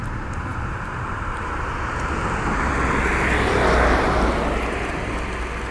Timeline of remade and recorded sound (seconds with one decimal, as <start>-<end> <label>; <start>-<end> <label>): 0.0-5.7 recorded